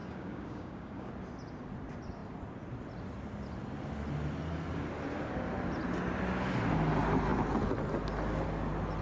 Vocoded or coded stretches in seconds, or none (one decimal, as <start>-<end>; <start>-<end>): 0.0-1.1